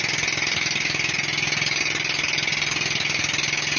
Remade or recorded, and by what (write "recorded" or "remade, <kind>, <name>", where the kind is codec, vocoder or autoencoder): recorded